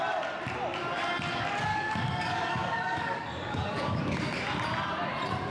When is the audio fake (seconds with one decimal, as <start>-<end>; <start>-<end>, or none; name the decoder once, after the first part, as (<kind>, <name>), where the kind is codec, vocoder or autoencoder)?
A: 1.7-4.0 (codec, DAC)